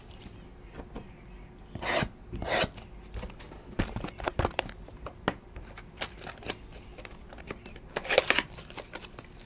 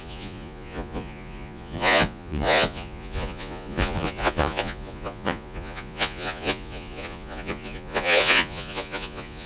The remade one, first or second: second